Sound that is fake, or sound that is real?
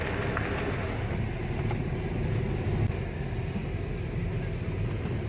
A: real